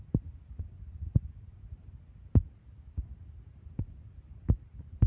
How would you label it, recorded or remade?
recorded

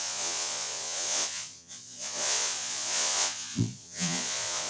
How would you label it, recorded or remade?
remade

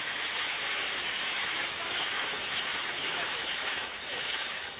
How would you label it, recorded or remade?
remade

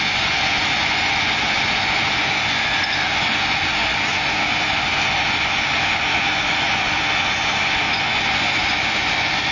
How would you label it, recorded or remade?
remade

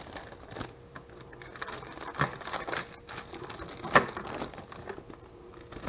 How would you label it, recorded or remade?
recorded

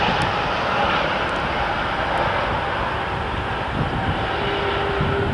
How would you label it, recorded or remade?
recorded